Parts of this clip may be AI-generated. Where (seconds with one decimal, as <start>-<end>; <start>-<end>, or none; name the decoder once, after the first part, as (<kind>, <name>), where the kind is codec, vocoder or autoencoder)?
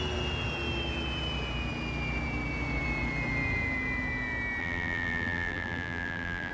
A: 4.6-6.5 (vocoder, BigVGAN v2)